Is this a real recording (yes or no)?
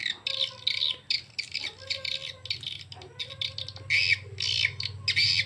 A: yes